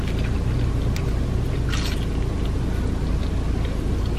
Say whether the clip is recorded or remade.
recorded